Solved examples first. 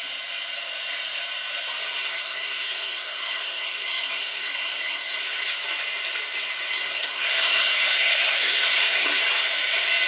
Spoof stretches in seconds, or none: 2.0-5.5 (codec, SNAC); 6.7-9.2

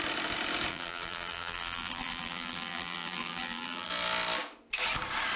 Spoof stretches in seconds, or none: 0.7-3.9 (vocoder, BigVGAN v2)

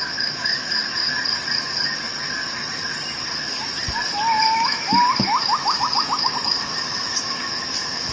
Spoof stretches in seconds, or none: 0.0-1.0 (autoencoder, DAC-VAE); 3.4-3.8; 4.4-8.1

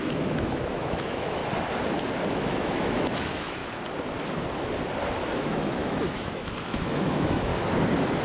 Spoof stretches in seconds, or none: 0.0-1.4 (autoencoder, DAC-VAE); 2.3-3.6; 5.2-7.5